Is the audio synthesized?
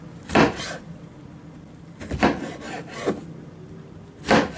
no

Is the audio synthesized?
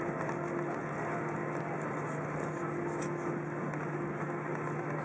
no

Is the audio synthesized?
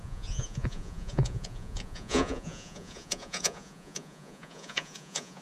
yes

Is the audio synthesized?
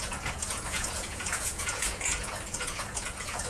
yes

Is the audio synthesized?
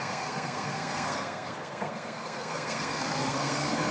yes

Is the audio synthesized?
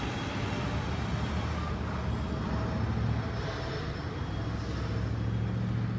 no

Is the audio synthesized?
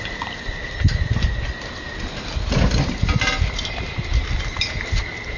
no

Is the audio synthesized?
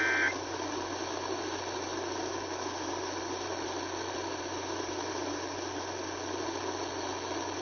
no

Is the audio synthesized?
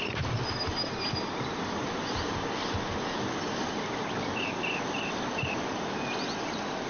no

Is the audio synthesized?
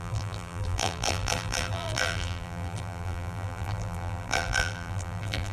yes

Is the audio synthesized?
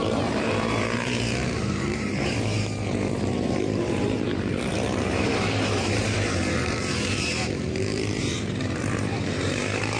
yes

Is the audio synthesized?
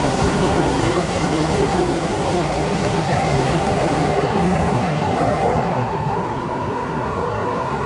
yes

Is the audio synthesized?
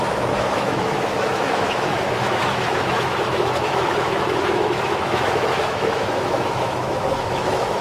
yes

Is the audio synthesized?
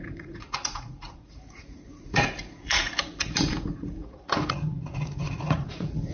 yes